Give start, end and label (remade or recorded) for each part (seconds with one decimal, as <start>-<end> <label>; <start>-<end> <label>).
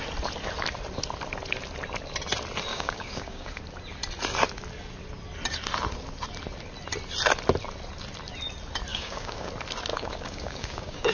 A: 0.0-2.7 recorded; 2.7-3.6 remade; 3.6-8.9 recorded; 8.9-9.5 remade; 9.5-9.9 recorded; 9.9-11.1 remade